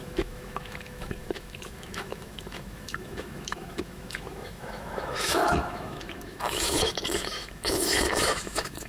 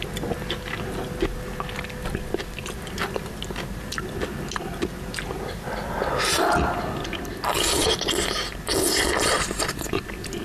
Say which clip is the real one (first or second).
second